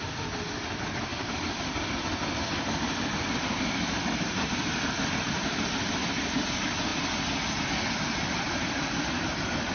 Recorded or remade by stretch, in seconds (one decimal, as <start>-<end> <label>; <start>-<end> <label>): 0.0-9.7 recorded